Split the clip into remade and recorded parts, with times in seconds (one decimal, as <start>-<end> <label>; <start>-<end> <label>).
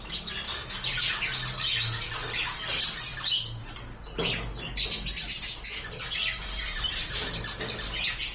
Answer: 0.0-6.2 recorded; 6.2-7.3 remade; 7.3-8.3 recorded